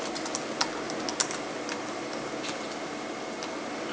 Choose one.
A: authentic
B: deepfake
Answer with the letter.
A